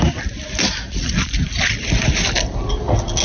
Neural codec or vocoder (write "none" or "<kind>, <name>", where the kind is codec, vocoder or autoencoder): none